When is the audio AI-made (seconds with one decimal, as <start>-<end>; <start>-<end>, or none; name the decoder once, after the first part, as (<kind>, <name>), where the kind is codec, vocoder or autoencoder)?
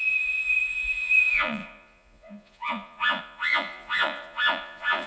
0.0-5.1 (vocoder, Vocos)